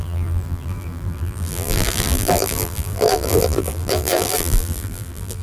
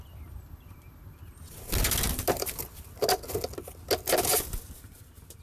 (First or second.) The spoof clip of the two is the first